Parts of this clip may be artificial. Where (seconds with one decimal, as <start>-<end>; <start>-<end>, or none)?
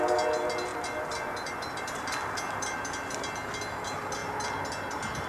0.7-2.8